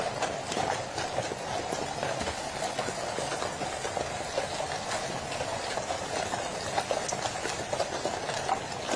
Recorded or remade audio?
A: recorded